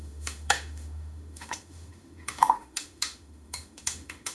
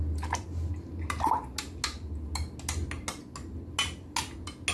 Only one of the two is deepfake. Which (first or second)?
first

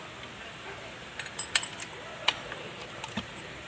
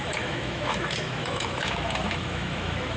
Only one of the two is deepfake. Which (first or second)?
second